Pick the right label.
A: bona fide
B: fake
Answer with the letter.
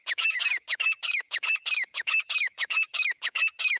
B